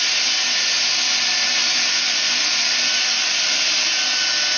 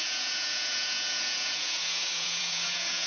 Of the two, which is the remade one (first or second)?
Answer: second